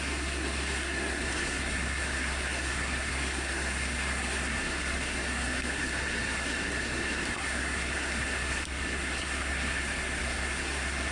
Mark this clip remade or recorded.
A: remade